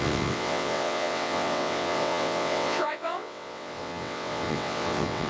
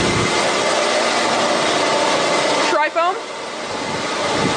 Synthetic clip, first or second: first